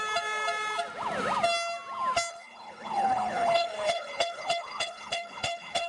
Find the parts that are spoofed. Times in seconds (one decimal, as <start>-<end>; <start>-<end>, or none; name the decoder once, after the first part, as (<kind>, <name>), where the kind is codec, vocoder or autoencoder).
2.3-5.9 (codec, HILCodec)